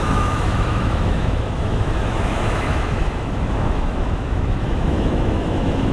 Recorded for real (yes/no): no